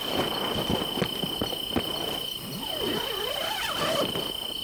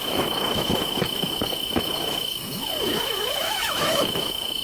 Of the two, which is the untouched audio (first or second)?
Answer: first